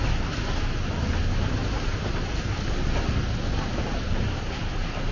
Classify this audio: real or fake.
real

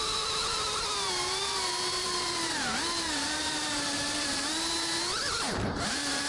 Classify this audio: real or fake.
fake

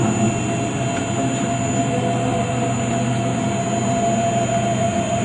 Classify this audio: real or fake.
real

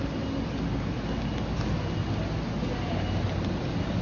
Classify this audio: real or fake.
real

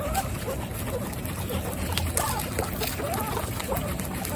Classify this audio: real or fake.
real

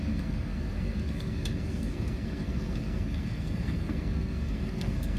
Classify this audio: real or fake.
fake